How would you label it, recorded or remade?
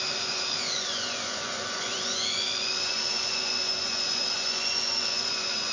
remade